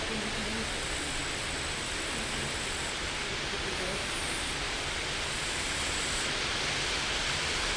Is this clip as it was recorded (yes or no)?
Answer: yes